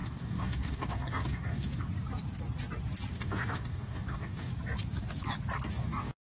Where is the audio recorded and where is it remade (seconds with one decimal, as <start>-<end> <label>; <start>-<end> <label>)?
0.0-1.7 remade; 1.7-3.1 recorded; 3.1-4.5 remade; 4.5-5.7 recorded; 5.7-6.2 remade